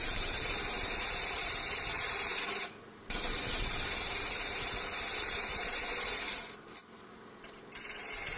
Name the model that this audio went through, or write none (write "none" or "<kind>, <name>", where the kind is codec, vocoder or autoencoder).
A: vocoder, BigVGAN v2